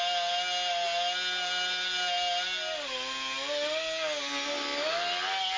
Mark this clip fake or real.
real